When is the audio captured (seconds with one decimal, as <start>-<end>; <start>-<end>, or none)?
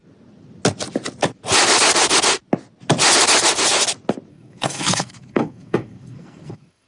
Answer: 0.0-4.3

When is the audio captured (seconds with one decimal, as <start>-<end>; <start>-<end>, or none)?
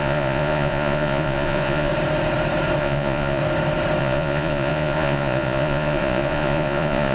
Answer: 1.9-2.8; 3.4-4.0